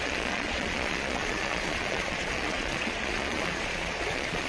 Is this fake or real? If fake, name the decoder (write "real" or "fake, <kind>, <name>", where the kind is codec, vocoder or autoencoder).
fake, vocoder, Vocos